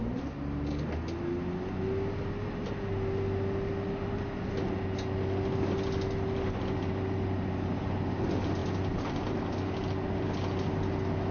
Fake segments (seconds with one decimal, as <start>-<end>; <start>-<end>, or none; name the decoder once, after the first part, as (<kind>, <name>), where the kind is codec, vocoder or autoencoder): none